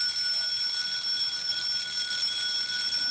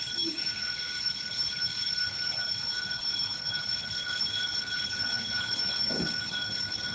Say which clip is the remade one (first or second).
second